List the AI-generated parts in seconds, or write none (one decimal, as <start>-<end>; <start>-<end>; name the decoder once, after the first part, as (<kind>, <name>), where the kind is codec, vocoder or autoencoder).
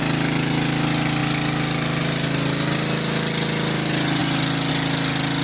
none